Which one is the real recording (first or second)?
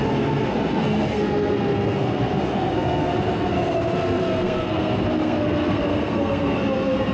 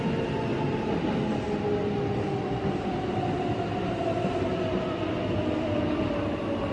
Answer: second